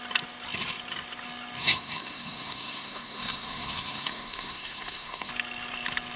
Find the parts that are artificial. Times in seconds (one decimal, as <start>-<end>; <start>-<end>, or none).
1.6-5.3